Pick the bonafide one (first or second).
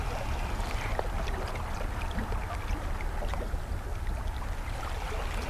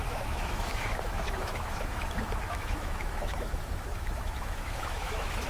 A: first